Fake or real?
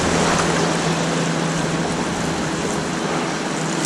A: real